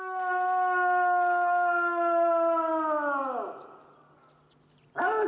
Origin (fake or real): real